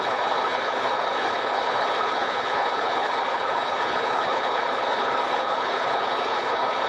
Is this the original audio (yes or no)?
no